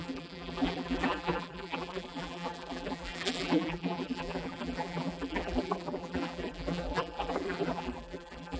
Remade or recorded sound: remade